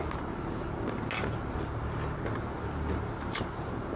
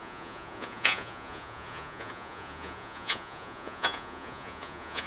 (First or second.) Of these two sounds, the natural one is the first